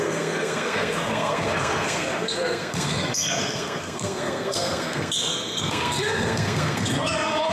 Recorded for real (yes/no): no